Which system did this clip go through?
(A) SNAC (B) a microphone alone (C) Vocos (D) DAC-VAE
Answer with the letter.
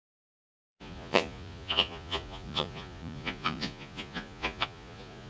C